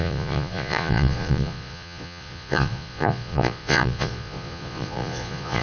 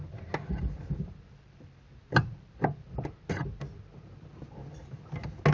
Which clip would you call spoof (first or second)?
first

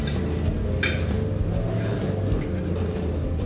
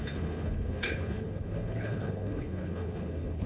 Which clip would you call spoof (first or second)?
second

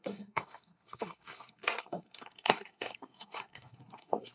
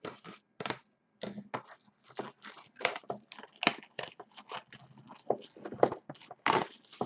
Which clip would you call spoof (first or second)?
first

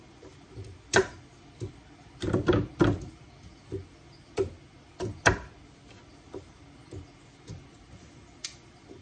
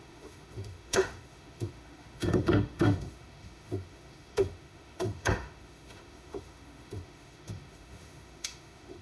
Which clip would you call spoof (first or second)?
second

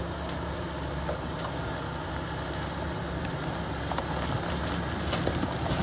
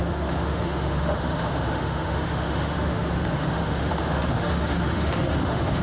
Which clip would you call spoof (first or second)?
second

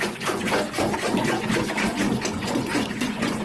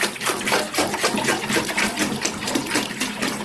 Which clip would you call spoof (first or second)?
first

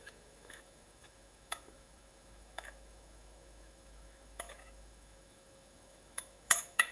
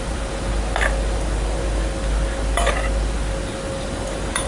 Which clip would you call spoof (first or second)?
first